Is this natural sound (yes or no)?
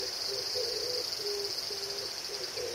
yes